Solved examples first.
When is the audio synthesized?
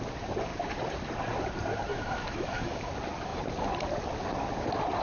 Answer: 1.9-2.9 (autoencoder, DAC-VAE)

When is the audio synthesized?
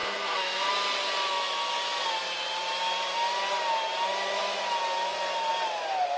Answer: 0.0-0.7 (codec, SNAC)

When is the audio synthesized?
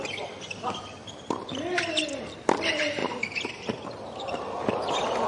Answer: 3.0-3.5 (vocoder, BigVGAN v2)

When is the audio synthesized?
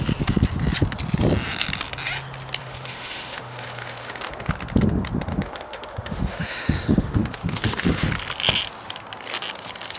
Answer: 2.6-4.5 (autoencoder, DAC-VAE); 5.3-8.1